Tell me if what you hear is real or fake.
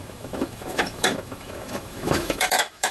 fake